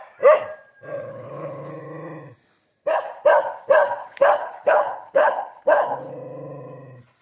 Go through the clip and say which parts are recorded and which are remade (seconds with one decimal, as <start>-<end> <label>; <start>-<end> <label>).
0.0-1.1 recorded; 1.1-1.7 remade; 1.7-4.0 recorded; 4.0-6.1 remade; 6.1-7.2 recorded